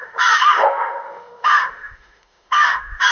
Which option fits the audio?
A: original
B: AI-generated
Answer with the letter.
B